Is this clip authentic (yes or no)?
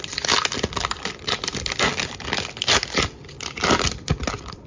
yes